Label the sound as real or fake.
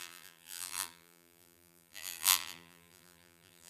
fake